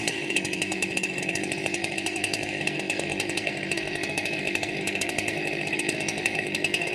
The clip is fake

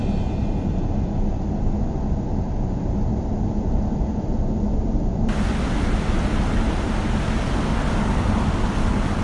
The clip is real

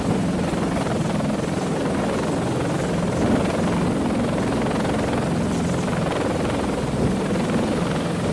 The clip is real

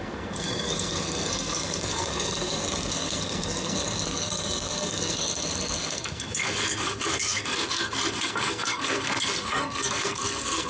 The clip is fake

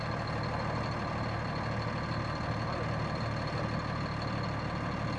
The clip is real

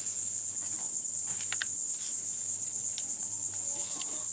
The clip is real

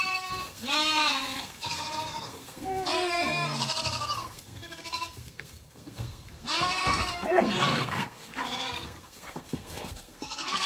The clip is fake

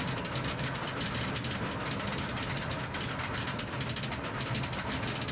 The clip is real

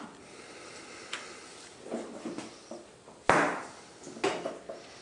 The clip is real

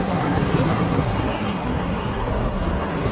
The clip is fake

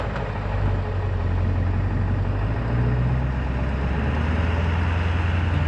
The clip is real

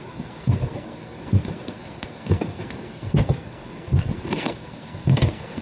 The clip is fake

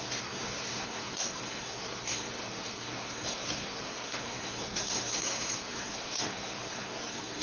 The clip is fake